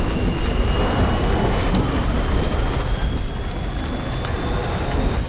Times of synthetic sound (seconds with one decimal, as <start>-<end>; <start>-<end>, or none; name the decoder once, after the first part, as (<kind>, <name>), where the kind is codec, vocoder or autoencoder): 1.6-4.8 (vocoder, BigVGAN v2)